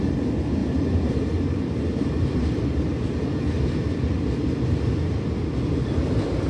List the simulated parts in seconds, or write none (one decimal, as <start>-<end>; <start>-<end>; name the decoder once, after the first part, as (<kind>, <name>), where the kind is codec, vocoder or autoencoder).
0.6-2.6 (vocoder, BigVGAN v2)